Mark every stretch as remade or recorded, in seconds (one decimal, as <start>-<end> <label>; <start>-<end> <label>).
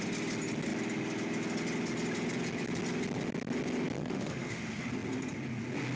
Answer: 0.0-4.0 recorded; 4.0-4.6 remade; 4.6-6.0 recorded